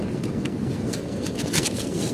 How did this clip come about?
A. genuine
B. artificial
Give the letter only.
B